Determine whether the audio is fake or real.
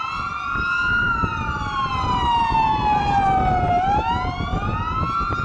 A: real